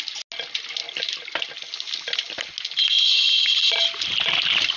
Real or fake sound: real